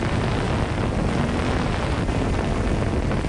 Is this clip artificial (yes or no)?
no